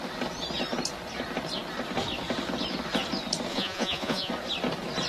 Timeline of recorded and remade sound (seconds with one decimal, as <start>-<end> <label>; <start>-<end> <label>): 0.0-3.5 recorded; 3.5-4.3 remade; 4.3-5.1 recorded